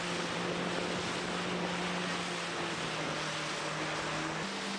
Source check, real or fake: real